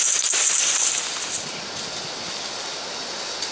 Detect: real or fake real